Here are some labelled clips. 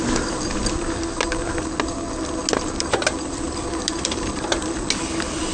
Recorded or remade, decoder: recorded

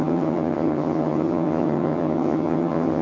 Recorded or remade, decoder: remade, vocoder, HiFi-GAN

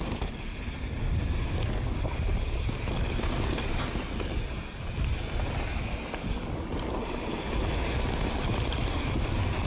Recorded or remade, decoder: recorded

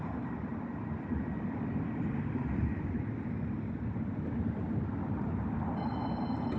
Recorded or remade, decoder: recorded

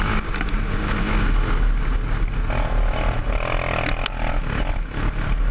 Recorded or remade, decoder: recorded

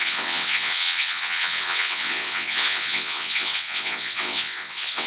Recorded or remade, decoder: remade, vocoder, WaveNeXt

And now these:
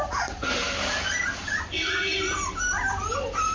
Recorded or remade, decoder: remade, vocoder, BigVGAN v2